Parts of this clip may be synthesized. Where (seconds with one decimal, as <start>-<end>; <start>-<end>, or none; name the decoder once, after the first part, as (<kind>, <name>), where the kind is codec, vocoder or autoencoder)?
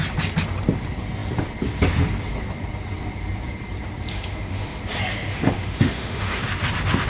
4.1-4.8 (autoencoder, DAC-VAE); 5.3-6.4